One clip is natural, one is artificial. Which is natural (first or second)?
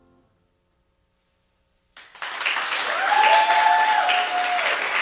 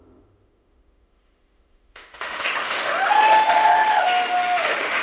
first